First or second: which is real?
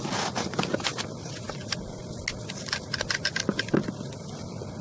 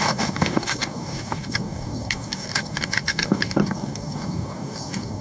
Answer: first